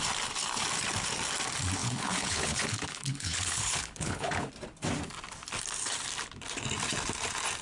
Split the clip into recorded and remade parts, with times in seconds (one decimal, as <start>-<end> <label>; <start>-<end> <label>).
0.0-1.8 recorded; 1.8-4.5 remade; 4.5-7.6 recorded